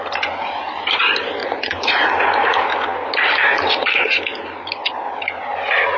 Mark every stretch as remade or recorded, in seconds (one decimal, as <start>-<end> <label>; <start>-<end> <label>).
0.0-1.4 recorded; 1.4-2.6 remade; 2.6-3.4 recorded; 3.4-4.2 remade; 4.2-6.0 recorded